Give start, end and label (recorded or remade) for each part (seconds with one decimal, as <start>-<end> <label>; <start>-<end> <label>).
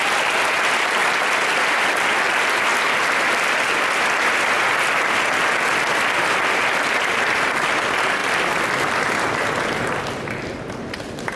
0.0-11.4 recorded